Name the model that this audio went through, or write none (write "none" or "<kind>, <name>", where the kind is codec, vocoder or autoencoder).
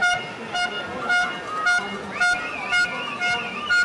none